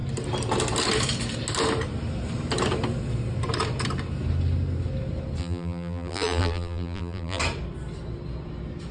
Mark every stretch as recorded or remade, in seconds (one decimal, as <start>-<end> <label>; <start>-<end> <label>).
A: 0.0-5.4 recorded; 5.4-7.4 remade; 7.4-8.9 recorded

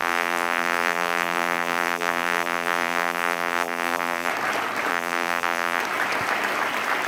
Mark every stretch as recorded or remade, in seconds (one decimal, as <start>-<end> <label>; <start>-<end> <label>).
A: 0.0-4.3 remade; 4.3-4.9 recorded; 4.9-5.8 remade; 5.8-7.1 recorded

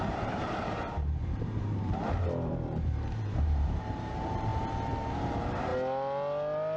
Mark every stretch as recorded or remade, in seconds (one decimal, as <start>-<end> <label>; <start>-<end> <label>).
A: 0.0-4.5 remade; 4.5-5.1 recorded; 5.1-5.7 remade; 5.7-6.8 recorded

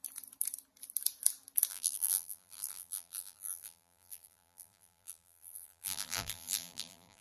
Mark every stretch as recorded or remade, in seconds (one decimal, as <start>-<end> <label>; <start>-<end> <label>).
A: 0.0-1.7 recorded; 1.7-7.2 remade

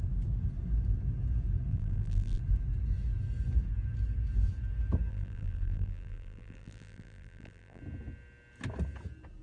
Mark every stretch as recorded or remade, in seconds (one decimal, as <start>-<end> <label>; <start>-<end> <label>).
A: 0.0-1.7 recorded; 1.7-2.4 remade; 2.4-5.1 recorded; 5.1-7.8 remade; 7.8-9.4 recorded

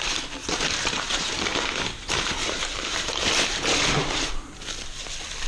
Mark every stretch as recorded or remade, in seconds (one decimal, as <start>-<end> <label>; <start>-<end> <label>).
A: 0.0-0.4 recorded; 0.4-1.3 remade; 1.3-2.4 recorded; 2.4-4.3 remade; 4.3-5.5 recorded